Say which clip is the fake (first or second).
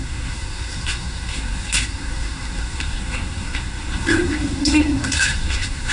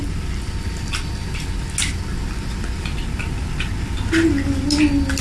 first